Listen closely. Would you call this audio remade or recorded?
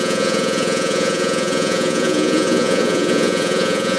remade